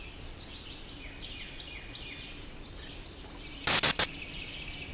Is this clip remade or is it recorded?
recorded